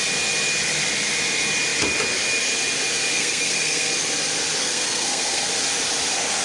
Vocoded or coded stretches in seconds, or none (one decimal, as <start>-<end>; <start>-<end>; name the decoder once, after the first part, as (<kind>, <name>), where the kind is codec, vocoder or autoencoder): 3.1-3.9 (codec, SNAC); 4.6-5.5

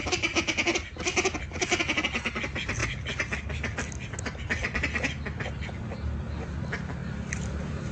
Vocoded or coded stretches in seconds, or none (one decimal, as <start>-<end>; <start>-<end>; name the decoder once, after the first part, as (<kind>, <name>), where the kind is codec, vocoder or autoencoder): none

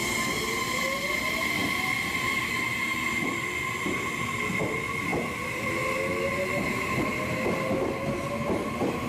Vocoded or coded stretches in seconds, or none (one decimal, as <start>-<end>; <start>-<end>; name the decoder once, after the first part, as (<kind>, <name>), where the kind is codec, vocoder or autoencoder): none

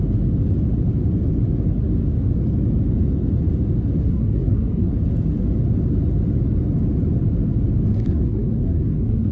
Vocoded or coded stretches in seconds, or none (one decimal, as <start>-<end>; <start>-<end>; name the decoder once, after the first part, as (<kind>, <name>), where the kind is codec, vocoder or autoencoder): 4.0-4.9 (codec, SNAC); 7.9-9.3

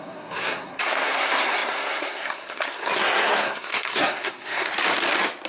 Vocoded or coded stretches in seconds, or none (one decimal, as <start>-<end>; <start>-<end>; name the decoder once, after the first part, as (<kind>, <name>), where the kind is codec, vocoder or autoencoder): 0.0-4.7 (codec, SNAC)

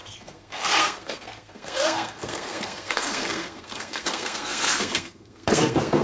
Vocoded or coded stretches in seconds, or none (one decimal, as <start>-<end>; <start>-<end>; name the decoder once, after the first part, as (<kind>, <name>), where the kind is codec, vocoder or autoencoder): 0.0-6.0 (codec, SNAC)

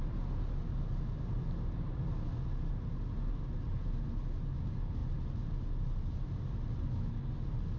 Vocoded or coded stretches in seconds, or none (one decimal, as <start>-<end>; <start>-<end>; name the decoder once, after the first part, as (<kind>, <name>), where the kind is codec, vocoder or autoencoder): none

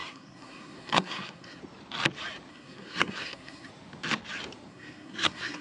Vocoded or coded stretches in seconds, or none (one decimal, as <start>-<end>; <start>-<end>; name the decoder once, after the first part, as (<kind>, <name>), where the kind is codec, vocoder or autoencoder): 0.0-1.6 (codec, SNAC); 2.5-3.7; 4.7-5.6